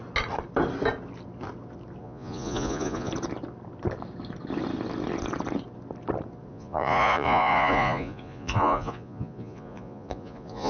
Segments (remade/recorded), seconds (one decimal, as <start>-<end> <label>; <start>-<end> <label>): 0.0-2.0 recorded; 2.0-3.1 remade; 3.1-6.5 recorded; 6.5-10.7 remade